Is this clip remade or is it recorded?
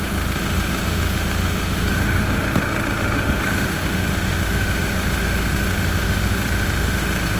remade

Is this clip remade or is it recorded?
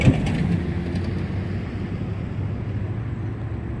recorded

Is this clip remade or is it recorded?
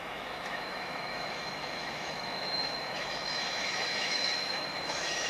remade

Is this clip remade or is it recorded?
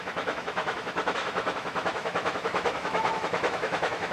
remade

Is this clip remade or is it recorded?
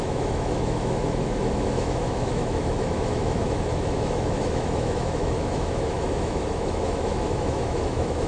remade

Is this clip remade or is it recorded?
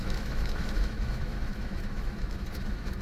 remade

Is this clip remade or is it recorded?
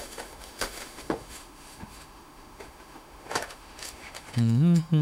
remade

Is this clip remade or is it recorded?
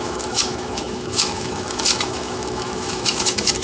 remade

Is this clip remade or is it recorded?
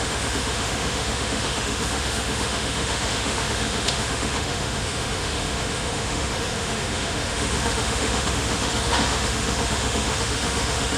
remade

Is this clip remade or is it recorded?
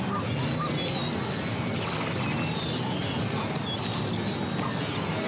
recorded